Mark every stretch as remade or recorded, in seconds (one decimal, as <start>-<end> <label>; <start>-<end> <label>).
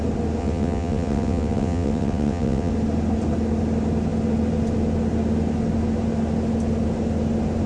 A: 0.0-0.4 recorded; 0.4-2.7 remade; 2.7-7.7 recorded